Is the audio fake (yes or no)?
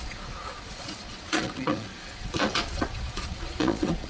yes